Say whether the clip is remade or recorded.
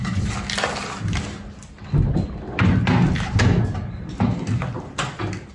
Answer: recorded